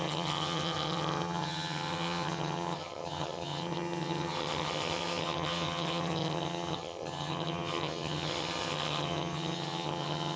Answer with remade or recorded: remade